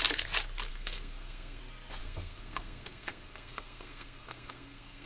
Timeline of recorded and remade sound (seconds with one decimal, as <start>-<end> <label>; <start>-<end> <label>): 0.0-0.7 recorded; 0.7-1.6 remade; 1.6-2.0 recorded; 2.0-5.1 remade